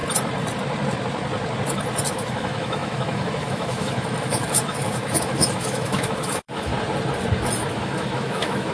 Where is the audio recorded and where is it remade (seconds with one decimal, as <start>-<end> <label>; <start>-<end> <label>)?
0.0-2.1 recorded; 2.1-6.7 remade; 6.7-7.7 recorded; 7.7-8.7 remade